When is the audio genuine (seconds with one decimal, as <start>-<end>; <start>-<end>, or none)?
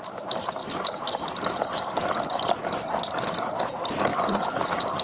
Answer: 0.0-5.0